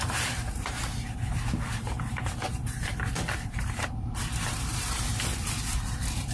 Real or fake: fake